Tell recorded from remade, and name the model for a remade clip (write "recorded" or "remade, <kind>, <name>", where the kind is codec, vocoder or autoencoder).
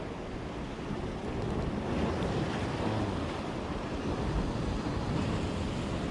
recorded